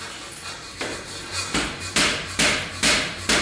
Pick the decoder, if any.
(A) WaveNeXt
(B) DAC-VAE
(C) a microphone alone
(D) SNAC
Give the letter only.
C